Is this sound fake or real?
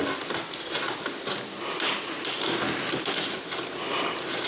real